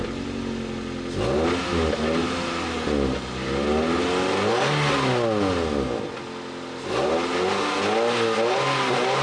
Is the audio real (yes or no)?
yes